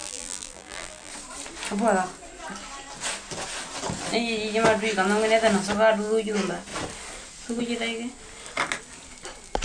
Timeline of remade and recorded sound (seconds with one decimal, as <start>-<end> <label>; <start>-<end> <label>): 0.0-1.1 remade; 1.1-9.6 recorded